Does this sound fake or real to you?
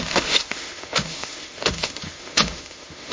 fake